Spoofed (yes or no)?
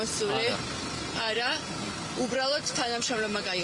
no